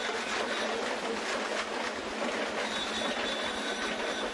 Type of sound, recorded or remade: recorded